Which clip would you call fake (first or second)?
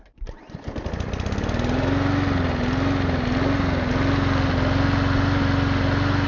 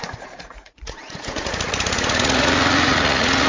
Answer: second